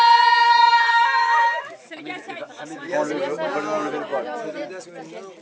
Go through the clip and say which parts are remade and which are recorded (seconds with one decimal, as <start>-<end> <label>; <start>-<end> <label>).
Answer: 0.0-1.2 recorded; 1.2-3.1 remade; 3.1-5.4 recorded